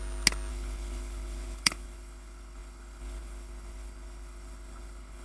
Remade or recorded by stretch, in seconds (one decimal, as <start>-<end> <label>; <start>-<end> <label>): 0.0-0.5 recorded; 0.5-5.2 remade